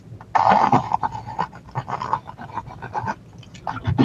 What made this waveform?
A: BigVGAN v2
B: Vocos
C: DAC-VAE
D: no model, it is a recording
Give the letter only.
D